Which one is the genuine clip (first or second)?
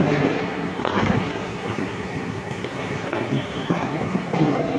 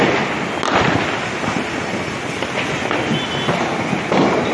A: second